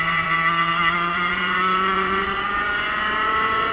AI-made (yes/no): yes